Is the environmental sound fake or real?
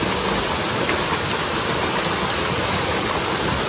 real